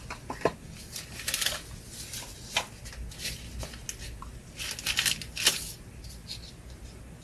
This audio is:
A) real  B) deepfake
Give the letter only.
A